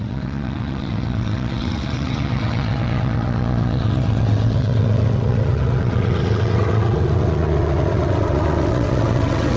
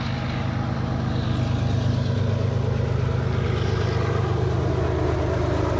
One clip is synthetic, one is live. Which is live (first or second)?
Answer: second